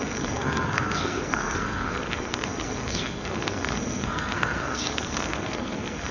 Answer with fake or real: fake